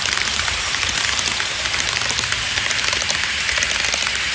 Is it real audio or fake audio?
fake